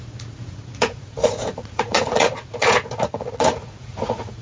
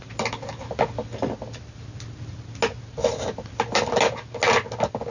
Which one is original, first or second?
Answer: second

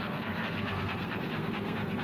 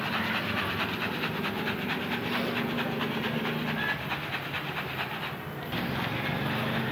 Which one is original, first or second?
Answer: second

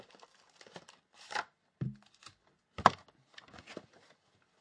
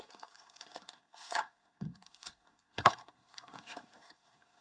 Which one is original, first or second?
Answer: first